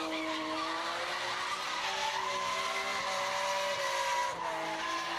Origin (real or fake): real